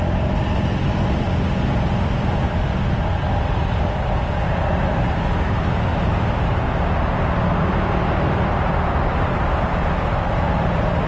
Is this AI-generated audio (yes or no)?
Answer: no